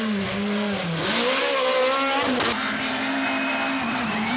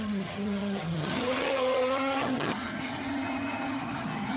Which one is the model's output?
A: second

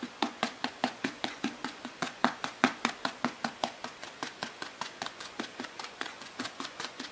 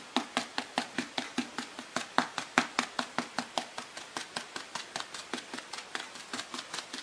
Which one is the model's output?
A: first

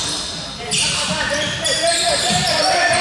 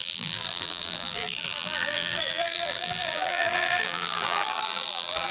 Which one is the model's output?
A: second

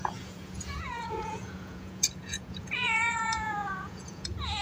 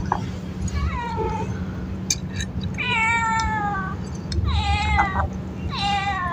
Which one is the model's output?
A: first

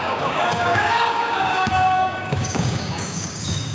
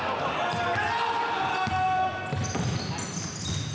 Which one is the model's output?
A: first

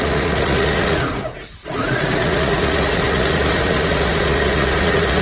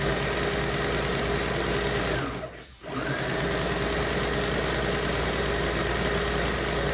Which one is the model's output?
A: first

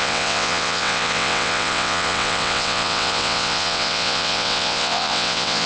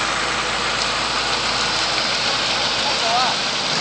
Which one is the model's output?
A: first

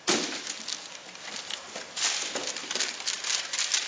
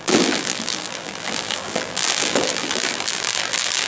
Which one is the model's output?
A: second